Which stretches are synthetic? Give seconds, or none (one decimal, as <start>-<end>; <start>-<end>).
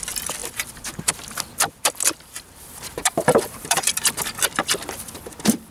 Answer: 3.0-3.9